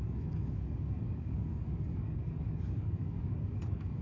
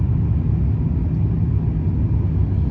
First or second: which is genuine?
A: second